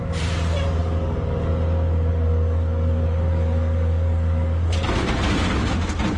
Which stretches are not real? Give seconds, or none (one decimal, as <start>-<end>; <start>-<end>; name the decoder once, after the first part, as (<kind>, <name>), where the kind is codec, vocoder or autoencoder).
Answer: 0.8-1.5 (codec, DAC); 2.1-4.9